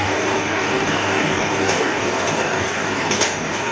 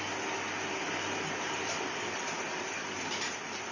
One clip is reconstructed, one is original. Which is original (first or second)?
second